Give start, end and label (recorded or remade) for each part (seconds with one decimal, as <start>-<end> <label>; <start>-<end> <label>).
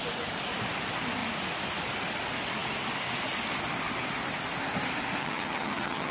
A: 0.0-5.2 recorded; 5.2-6.1 remade